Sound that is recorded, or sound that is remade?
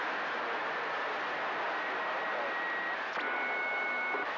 recorded